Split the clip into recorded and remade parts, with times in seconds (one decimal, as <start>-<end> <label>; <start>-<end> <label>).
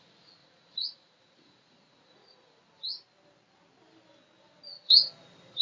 0.0-0.4 recorded; 0.4-2.6 remade; 2.6-5.6 recorded